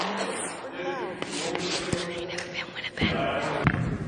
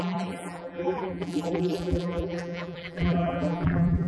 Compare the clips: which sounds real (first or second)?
first